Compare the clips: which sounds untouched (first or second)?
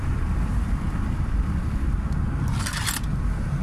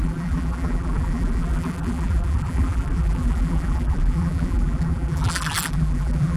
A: first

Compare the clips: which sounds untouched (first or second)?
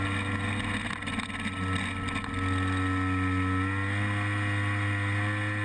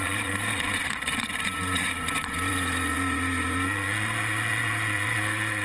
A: first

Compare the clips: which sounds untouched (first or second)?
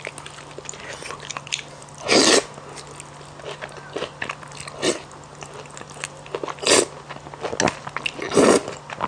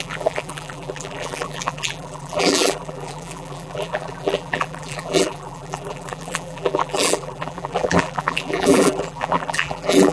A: first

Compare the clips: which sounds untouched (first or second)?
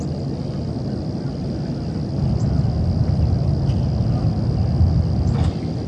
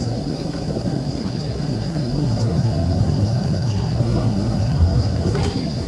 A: first